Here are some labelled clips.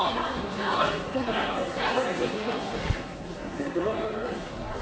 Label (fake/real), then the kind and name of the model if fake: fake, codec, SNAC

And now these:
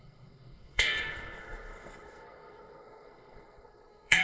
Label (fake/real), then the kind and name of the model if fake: fake, codec, SNAC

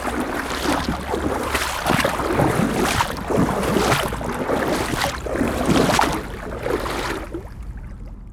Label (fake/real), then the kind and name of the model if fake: real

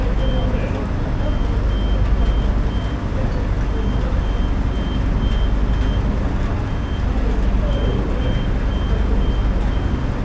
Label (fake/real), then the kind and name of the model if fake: real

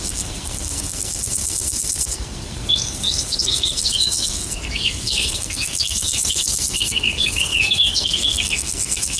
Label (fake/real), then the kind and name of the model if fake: fake, codec, SNAC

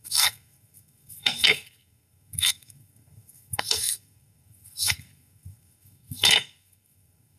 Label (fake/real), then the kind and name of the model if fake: fake, codec, SNAC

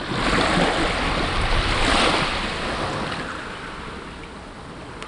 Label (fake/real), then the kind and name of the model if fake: real